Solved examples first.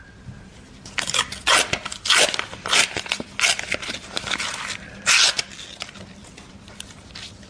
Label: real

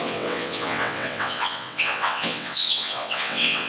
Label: fake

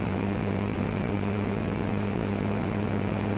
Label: fake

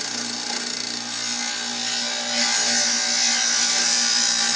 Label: real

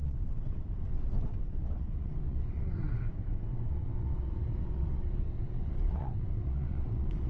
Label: fake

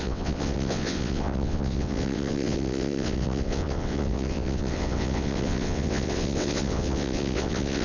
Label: fake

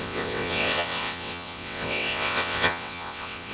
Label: fake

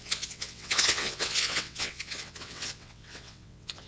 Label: fake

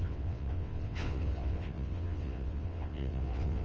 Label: fake